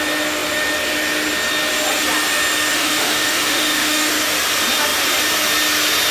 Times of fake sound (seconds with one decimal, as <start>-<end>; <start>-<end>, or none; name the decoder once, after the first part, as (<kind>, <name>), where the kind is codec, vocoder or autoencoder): 2.7-4.1 (autoencoder, DAC-VAE)

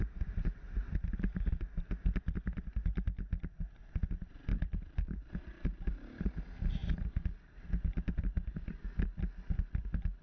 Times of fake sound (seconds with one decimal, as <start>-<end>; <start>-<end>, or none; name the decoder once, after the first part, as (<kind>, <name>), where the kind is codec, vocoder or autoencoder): 4.5-6.1 (vocoder, BigVGAN v2)